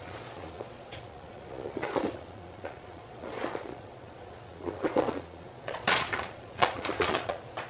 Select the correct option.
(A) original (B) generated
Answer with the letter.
B